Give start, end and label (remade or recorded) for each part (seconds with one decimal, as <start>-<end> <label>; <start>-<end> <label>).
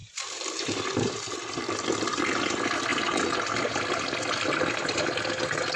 0.0-1.7 remade; 1.7-2.9 recorded; 2.9-3.7 remade; 3.7-5.8 recorded